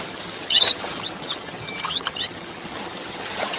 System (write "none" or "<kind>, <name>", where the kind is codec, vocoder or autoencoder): vocoder, HiFi-GAN